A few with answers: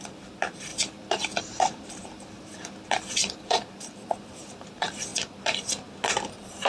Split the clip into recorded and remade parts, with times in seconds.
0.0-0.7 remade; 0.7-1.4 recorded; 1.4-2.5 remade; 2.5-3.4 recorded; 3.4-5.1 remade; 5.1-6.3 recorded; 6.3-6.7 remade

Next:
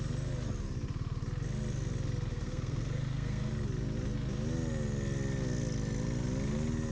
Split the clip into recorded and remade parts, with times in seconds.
0.0-2.3 recorded; 2.3-3.5 remade; 3.5-6.9 recorded

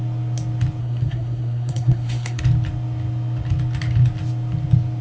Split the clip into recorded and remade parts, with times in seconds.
0.0-0.8 recorded; 0.8-2.4 remade; 2.4-5.0 recorded

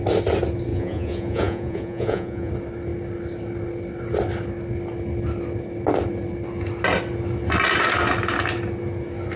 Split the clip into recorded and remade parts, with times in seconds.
0.0-0.7 recorded; 0.7-2.5 remade; 2.5-9.4 recorded

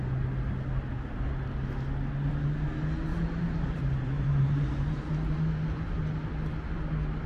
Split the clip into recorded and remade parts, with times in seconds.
0.0-3.1 recorded; 3.1-5.1 remade; 5.1-7.3 recorded

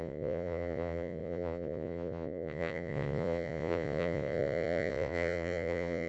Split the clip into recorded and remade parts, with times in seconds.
0.0-6.1 remade